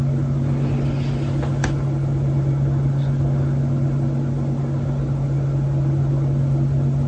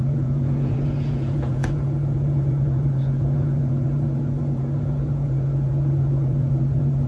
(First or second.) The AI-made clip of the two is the second